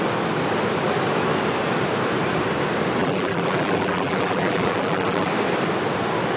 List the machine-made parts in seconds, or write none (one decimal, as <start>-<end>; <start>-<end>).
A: 3.0-5.3